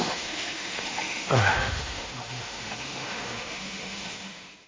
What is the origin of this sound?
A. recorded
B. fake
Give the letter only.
B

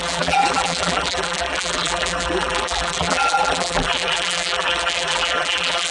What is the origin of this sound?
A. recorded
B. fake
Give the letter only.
B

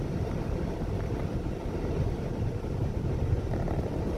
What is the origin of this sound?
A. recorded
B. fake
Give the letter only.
B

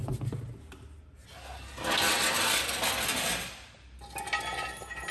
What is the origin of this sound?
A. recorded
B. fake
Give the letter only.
A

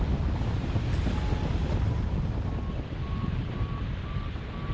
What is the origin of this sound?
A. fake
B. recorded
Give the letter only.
B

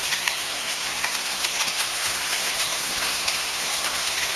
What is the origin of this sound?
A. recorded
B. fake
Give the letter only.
B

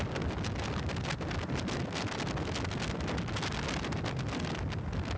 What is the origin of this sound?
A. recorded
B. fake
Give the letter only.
A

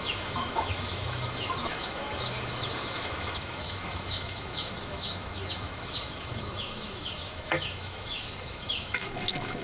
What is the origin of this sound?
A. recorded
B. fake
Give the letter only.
B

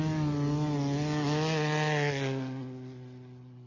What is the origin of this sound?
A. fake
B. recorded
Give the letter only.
B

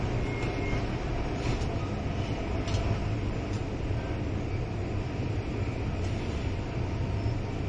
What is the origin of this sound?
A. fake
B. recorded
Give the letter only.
B